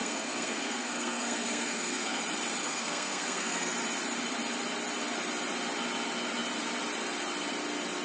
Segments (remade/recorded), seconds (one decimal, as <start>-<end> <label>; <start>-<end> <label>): 0.0-2.2 remade; 2.2-2.6 recorded; 2.6-3.7 remade; 3.7-8.0 recorded